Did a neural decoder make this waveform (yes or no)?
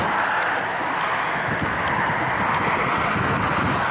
no